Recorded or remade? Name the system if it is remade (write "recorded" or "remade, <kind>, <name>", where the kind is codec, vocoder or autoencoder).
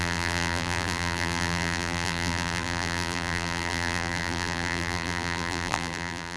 remade, vocoder, BigVGAN v2